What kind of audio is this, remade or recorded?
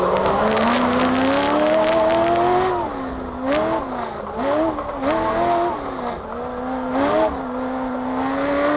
recorded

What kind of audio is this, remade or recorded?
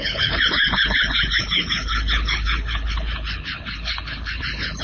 remade